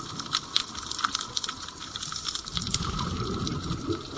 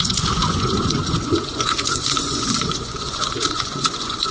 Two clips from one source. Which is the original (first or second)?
first